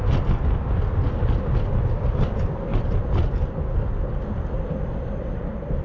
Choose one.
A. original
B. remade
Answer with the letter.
A